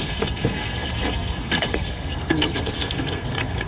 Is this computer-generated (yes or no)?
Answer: yes